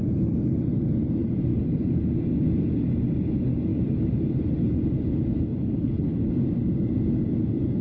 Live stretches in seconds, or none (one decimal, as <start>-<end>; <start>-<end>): 0.0-5.5; 6.3-7.8